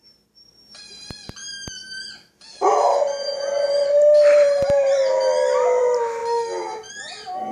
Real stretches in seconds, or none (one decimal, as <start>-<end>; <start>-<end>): 0.0-7.5